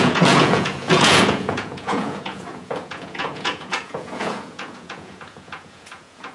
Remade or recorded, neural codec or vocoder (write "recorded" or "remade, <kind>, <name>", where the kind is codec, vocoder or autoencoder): remade, vocoder, Vocos